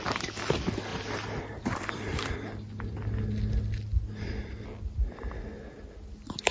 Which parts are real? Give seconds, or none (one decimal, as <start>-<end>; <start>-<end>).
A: 0.0-0.9; 2.3-6.5